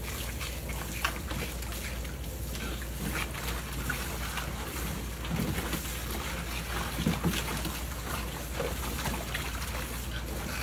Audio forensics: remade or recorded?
recorded